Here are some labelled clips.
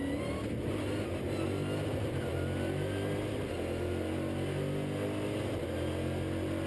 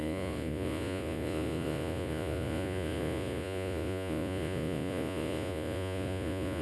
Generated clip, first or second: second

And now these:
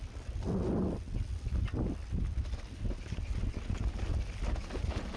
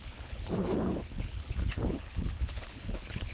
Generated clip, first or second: second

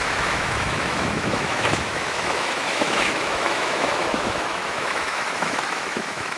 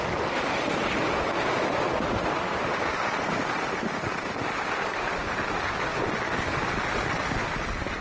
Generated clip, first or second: first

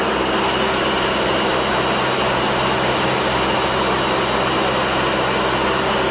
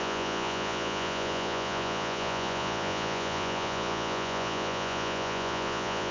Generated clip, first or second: second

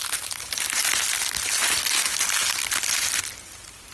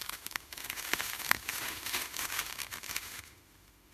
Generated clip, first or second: second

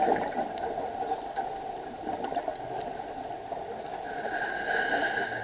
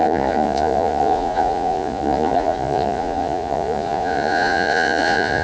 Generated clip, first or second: second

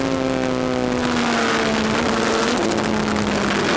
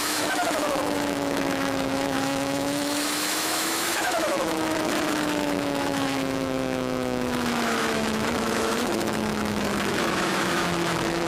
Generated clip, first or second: second